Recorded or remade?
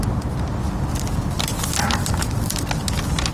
recorded